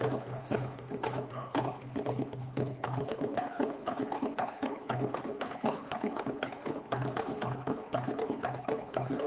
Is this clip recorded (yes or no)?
no